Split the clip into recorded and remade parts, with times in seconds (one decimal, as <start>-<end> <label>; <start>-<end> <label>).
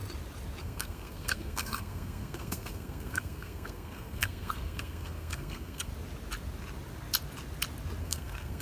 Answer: 0.0-0.6 recorded; 0.6-5.9 remade; 5.9-8.0 recorded; 8.0-8.6 remade